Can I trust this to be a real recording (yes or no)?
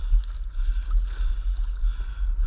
yes